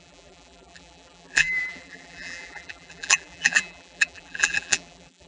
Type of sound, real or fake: fake